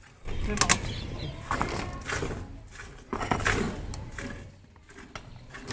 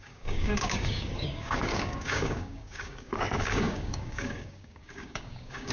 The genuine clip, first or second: first